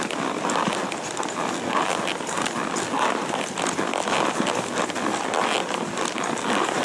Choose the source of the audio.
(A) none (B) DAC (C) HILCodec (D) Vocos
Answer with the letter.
A